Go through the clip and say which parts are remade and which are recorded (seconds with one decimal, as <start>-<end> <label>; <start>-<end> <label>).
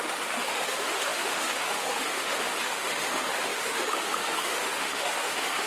0.0-5.7 remade